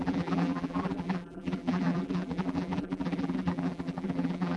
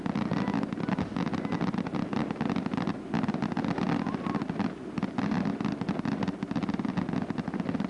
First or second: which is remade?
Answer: first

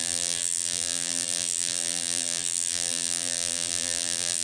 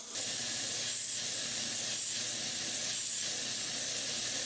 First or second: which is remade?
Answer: first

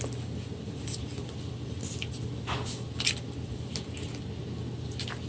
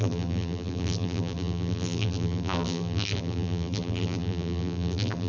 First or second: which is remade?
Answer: second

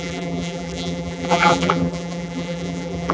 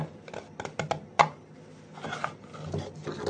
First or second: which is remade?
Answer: first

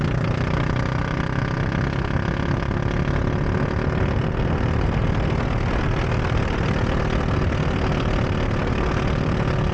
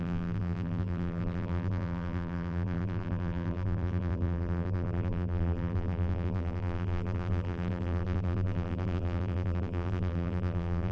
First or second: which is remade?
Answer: second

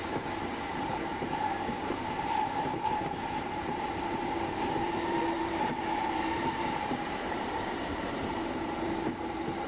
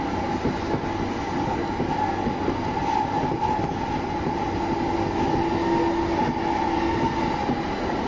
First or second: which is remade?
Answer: first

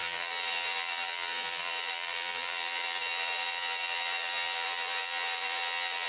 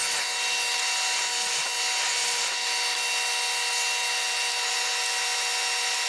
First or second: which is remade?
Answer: first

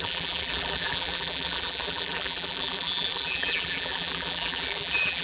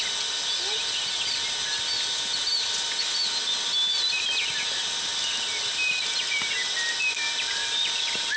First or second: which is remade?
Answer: first